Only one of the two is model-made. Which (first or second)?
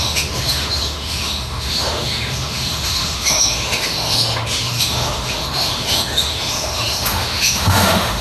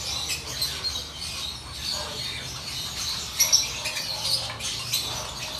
first